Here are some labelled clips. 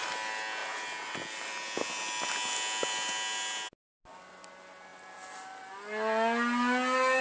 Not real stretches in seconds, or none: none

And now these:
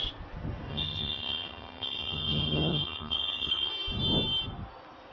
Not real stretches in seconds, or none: 0.7-3.7

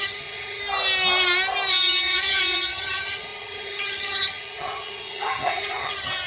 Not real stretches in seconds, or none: 0.0-0.6; 1.7-6.3

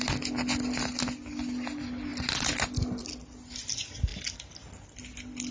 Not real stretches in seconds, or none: none

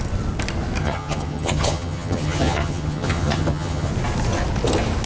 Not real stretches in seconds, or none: 0.8-3.9

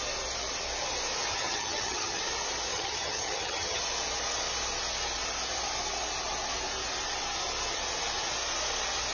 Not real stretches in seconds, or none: 1.3-2.2; 2.7-3.8

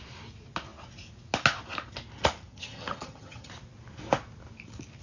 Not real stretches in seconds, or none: 2.5-3.5

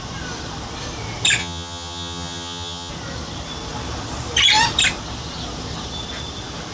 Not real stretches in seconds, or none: 1.4-2.9